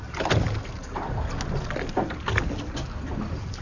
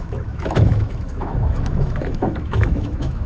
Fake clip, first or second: second